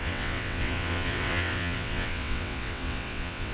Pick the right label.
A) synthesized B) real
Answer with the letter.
A